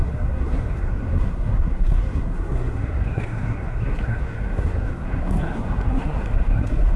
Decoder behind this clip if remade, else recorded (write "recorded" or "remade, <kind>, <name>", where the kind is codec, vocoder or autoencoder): remade, codec, SNAC